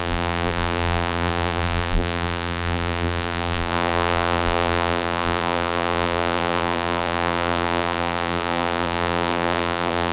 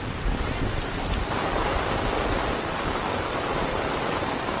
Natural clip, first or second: second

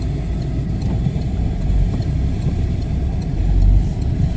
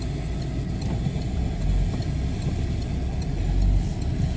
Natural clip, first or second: second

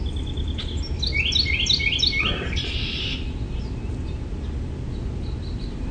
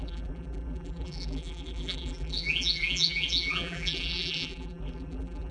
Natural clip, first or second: first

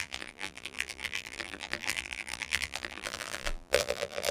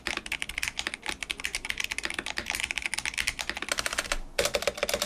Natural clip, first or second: second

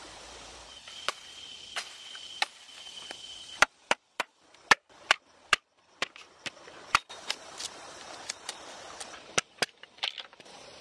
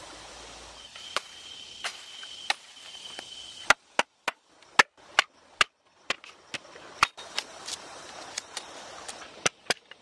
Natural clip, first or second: second